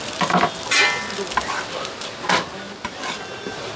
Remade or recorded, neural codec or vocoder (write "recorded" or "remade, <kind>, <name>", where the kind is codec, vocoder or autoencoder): recorded